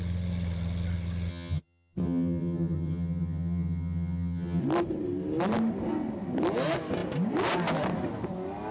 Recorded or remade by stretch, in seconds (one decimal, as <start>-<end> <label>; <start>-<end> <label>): 0.0-1.3 recorded; 1.3-4.6 remade; 4.6-8.7 recorded